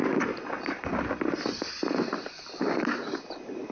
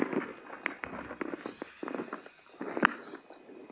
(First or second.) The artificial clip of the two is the first